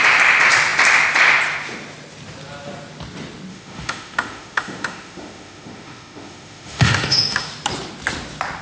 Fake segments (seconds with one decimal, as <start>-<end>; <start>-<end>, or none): 3.5-7.5